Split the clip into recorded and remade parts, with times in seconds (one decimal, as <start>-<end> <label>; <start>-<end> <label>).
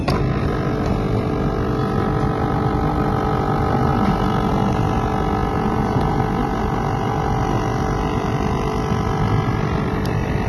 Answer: 0.0-5.4 recorded; 5.4-6.2 remade; 6.2-10.5 recorded